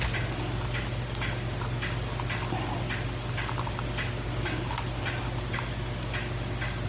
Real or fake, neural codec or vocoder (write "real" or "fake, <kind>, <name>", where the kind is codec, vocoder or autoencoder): real